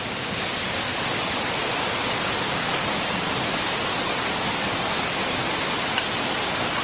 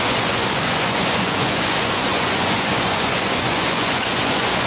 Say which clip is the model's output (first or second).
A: second